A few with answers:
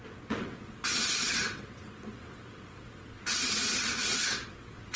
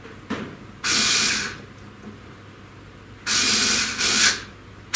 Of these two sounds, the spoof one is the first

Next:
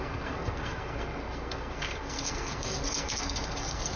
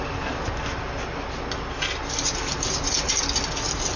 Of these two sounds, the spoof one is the first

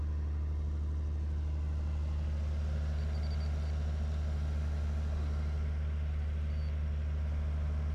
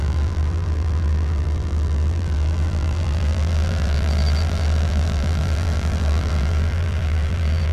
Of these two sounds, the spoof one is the second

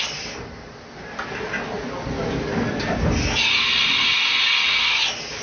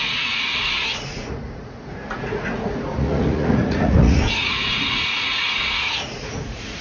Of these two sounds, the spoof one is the second